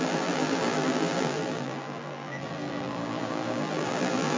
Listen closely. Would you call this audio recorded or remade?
remade